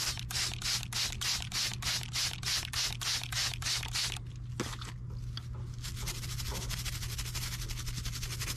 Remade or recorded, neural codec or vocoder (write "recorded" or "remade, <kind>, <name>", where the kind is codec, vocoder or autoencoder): recorded